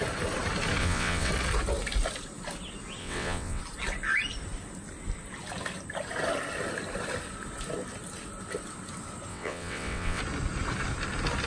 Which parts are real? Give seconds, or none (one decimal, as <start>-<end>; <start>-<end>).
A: 0.0-0.8; 1.3-3.0; 3.6-9.3; 10.2-11.5